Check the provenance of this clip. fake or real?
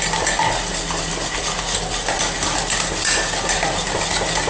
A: real